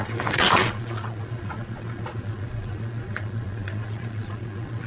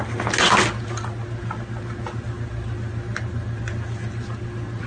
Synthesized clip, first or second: first